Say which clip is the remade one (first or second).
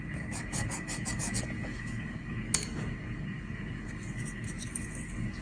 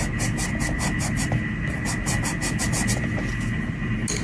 first